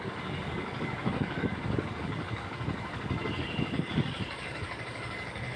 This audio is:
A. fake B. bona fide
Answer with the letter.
A